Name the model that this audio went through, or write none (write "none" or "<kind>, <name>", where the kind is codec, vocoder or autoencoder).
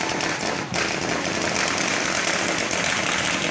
none